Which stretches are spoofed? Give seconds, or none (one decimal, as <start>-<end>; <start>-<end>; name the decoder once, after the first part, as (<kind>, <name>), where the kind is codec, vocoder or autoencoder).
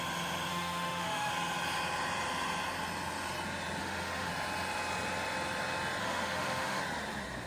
0.5-1.3 (autoencoder, DAC-VAE); 3.8-4.3; 6.0-6.8